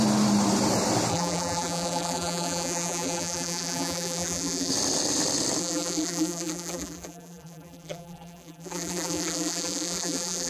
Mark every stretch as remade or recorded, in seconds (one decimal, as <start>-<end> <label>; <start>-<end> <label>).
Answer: 0.0-1.1 recorded; 1.1-4.7 remade; 4.7-5.6 recorded; 5.6-10.5 remade

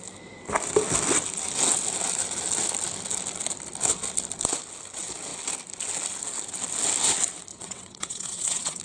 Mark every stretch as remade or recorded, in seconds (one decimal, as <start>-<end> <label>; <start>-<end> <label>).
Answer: 0.0-7.5 recorded; 7.5-8.8 remade

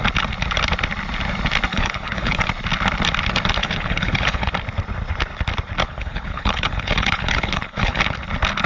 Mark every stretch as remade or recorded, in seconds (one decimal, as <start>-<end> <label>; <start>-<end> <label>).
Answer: 0.0-1.7 recorded; 1.7-2.4 remade; 2.4-3.6 recorded; 3.6-4.5 remade; 4.5-5.8 recorded; 5.8-8.0 remade; 8.0-8.7 recorded